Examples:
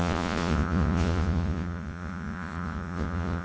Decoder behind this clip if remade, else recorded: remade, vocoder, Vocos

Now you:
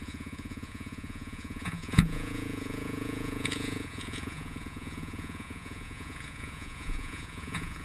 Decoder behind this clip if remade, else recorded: remade, vocoder, Vocos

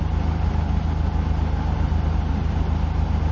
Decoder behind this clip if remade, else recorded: recorded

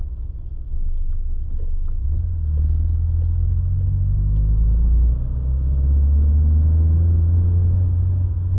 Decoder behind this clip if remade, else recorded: recorded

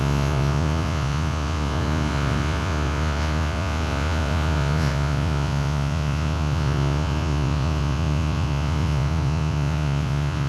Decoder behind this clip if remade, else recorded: remade, vocoder, Vocos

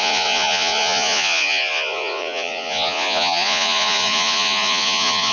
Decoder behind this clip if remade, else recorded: remade, vocoder, Vocos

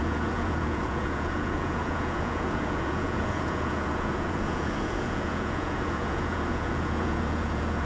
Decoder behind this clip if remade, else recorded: remade, vocoder, Vocos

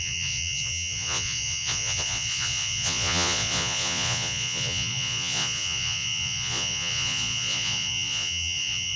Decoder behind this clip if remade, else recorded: remade, vocoder, Vocos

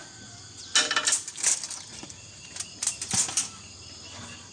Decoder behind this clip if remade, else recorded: recorded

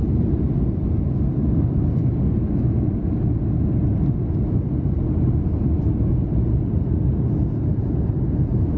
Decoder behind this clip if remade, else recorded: recorded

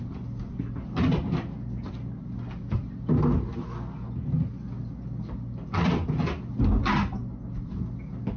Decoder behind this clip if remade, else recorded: recorded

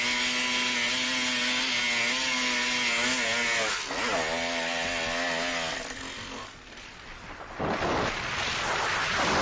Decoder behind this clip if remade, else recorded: recorded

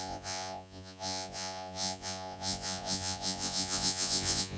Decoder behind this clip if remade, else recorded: remade, vocoder, Vocos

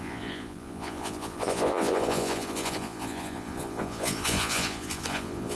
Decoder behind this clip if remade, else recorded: remade, vocoder, Vocos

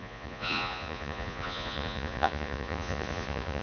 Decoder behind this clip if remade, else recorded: remade, vocoder, Vocos